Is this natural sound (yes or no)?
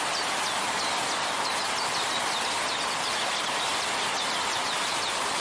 yes